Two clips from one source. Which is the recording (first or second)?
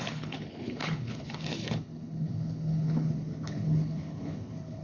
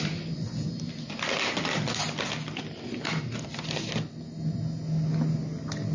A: second